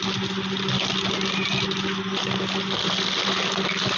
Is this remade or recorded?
recorded